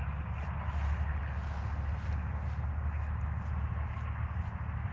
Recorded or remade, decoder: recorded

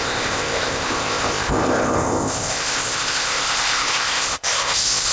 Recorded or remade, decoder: remade, codec, ZipCodec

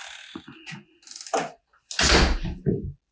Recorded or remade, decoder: recorded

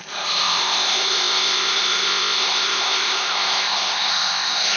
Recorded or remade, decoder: remade, codec, ZipCodec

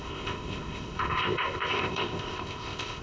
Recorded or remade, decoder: remade, codec, ZipCodec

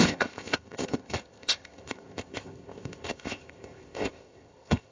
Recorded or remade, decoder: remade, codec, ZipCodec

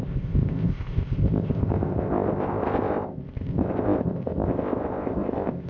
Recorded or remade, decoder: remade, codec, ZipCodec